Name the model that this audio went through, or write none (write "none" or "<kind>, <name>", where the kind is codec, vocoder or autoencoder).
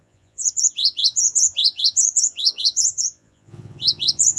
vocoder, Vocos